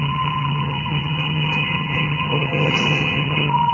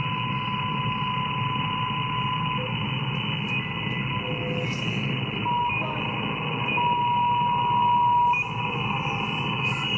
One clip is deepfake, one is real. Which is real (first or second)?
second